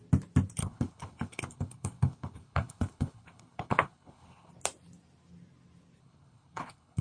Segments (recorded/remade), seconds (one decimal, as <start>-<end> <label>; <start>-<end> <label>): 0.0-0.6 recorded; 0.6-4.5 remade; 4.5-6.0 recorded; 6.0-7.0 remade